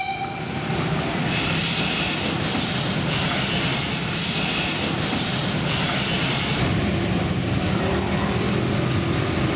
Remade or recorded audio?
recorded